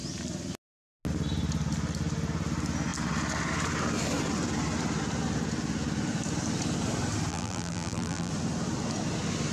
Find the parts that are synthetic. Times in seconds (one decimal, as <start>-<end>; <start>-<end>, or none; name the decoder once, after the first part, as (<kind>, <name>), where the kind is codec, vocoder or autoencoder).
7.3-8.3 (vocoder, BigVGAN v2)